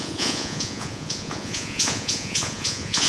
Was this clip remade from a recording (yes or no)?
yes